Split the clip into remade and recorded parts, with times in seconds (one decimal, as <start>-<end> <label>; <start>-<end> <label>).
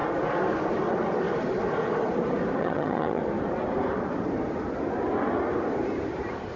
0.0-2.6 recorded; 2.6-3.2 remade; 3.2-6.6 recorded